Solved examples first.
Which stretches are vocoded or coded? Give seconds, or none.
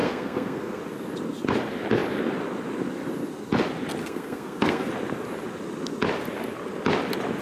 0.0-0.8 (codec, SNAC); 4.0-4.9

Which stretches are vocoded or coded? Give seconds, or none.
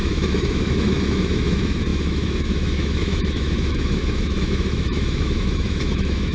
0.0-6.3 (autoencoder, DAC-VAE)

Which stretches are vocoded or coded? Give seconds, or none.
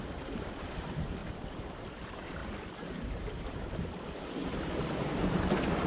0.0-1.2 (vocoder, BigVGAN v2); 1.9-5.9